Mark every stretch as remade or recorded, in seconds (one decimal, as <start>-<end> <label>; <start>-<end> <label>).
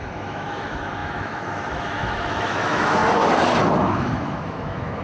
0.0-3.0 remade; 3.0-3.8 recorded; 3.8-5.0 remade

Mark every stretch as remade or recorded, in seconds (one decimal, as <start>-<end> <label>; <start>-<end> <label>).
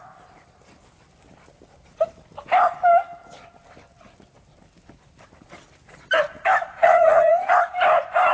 0.0-6.8 recorded; 6.8-7.6 remade; 7.6-8.3 recorded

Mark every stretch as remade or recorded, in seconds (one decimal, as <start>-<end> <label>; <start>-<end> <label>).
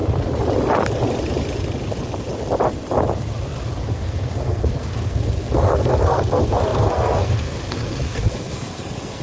0.0-3.9 recorded; 3.9-9.2 remade